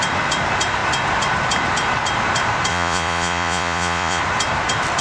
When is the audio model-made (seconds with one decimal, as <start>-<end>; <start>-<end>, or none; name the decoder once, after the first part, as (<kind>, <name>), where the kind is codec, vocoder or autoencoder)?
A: 2.7-4.2 (vocoder, Vocos)